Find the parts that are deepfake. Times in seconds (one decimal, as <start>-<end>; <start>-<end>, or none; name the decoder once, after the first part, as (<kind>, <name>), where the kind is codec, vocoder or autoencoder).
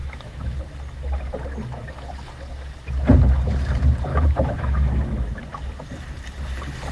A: 0.0-0.6 (autoencoder, DAC-VAE); 4.1-5.3